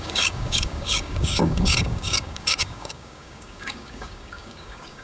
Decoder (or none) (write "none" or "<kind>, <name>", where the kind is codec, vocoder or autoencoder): codec, DAC